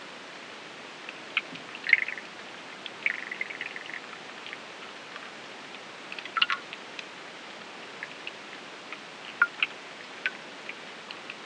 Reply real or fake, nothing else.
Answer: real